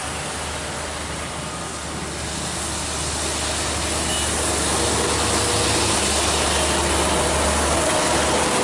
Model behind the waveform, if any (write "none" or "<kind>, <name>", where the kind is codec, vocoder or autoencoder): none